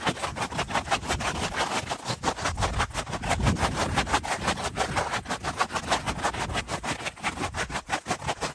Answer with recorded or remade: recorded